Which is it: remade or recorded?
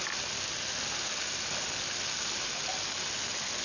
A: recorded